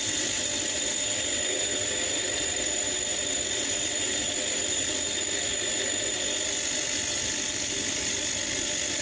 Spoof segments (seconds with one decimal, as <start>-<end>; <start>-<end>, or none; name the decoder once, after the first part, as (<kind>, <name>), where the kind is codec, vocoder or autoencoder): none